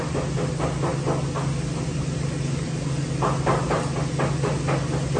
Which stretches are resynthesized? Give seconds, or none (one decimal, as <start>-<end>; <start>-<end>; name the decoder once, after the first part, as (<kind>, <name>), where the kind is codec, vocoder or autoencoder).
none